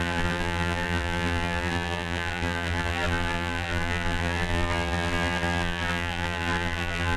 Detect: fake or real fake